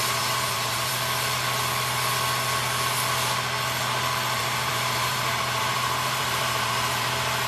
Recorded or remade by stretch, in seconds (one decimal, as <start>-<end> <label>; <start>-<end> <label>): 0.0-0.9 remade; 0.9-4.4 recorded; 4.4-7.1 remade; 7.1-7.5 recorded